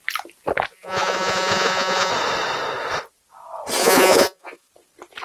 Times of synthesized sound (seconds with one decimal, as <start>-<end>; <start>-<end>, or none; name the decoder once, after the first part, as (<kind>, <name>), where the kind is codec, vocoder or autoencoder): 0.7-2.1 (vocoder, Vocos); 3.8-4.7